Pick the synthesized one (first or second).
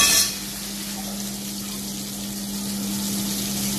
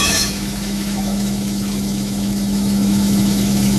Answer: second